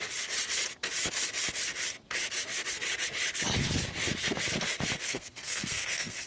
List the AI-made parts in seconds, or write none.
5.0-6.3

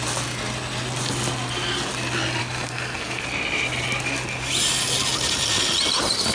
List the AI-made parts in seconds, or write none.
2.4-3.2

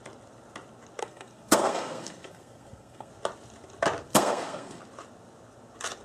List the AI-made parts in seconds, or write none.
1.0-3.1; 4.1-4.8

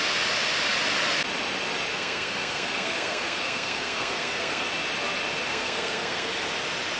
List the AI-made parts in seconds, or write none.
1.9-4.7; 5.5-6.3

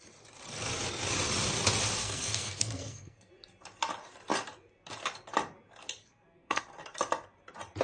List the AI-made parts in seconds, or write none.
2.0-3.3; 6.0-6.6